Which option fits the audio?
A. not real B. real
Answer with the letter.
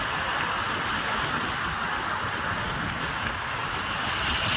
B